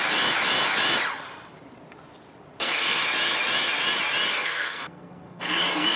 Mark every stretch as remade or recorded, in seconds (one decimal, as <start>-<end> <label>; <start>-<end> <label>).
0.0-2.6 recorded; 2.6-3.0 remade; 3.0-4.3 recorded; 4.3-6.0 remade